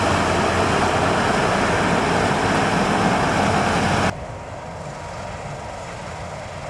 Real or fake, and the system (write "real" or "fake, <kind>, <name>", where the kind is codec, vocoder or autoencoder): real